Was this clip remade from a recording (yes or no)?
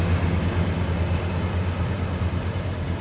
no